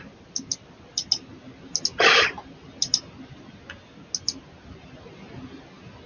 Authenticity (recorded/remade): recorded